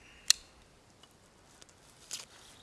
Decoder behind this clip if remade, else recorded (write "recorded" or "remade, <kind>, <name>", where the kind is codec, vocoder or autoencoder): recorded